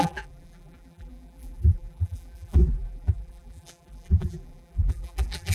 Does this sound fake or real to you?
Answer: fake